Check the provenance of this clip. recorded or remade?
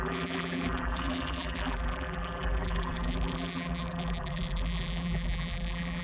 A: remade